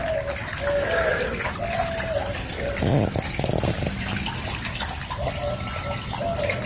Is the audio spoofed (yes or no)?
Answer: no